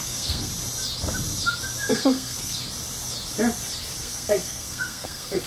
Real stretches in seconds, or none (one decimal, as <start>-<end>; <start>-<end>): 0.5-1.9; 2.6-4.0